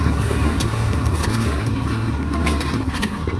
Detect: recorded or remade remade